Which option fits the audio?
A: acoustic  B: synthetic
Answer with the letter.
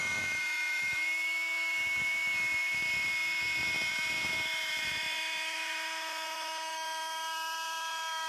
B